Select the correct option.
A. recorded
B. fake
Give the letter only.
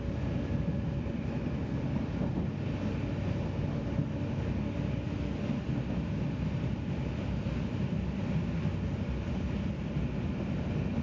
A